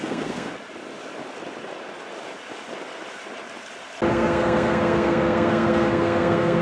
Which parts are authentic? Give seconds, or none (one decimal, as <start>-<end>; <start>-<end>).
0.5-4.1